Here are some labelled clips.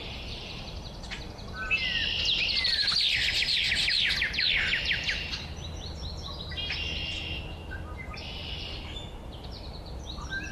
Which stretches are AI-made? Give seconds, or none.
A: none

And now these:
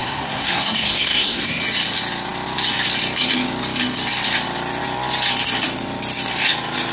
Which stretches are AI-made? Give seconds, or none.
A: 0.0-1.6

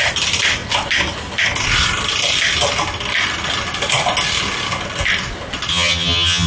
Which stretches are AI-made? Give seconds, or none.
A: 5.7-6.5

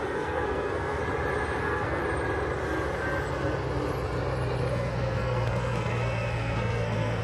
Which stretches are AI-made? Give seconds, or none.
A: 0.0-1.0; 1.6-2.0; 4.7-7.2

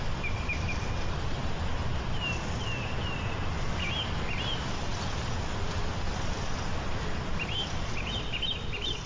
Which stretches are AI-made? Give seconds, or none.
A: none